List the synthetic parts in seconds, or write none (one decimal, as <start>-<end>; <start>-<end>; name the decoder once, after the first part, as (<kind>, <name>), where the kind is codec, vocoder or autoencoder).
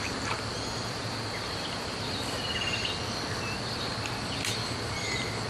none